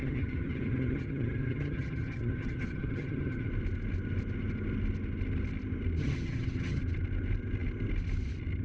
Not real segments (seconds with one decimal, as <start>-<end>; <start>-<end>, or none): 0.0-3.5; 6.0-6.8